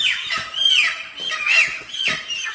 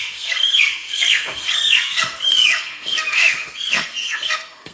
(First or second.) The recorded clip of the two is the first